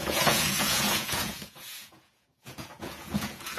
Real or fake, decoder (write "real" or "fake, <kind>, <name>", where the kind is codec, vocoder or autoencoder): fake, vocoder, Vocos